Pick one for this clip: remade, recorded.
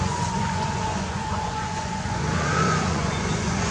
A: remade